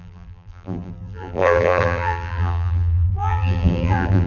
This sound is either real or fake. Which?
fake